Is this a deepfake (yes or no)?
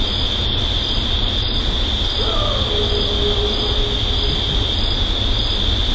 no